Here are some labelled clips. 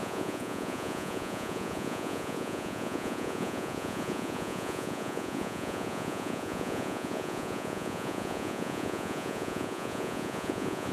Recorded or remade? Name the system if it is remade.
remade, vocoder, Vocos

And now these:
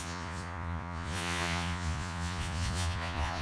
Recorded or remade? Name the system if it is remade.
remade, vocoder, Vocos